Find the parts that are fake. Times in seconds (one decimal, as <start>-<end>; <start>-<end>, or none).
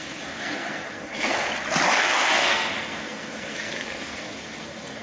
0.0-1.5; 2.0-5.0